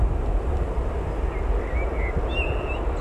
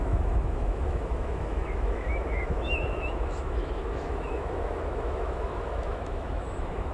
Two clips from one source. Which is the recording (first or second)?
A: first